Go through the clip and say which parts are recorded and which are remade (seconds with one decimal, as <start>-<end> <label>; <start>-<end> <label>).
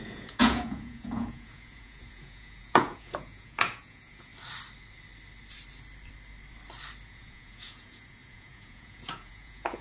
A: 0.0-4.3 remade; 4.3-7.1 recorded; 7.1-9.8 remade